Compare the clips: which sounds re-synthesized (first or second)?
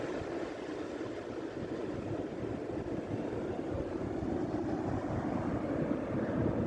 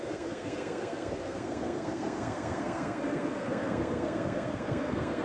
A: second